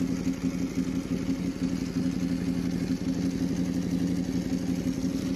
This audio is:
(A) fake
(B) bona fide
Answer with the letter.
B